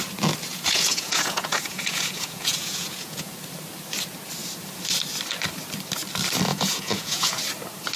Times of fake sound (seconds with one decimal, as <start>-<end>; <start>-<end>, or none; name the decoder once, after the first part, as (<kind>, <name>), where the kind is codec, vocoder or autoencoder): 0.5-3.3 (vocoder, Vocos); 6.5-7.4